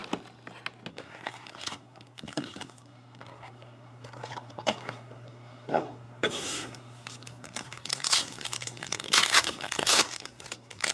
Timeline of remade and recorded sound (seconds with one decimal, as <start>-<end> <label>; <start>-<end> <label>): 0.0-0.9 recorded; 0.9-10.9 remade